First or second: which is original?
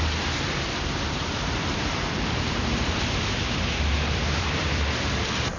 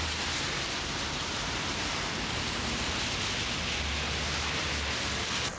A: second